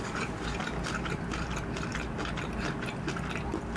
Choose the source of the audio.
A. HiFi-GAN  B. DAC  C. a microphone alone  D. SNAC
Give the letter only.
C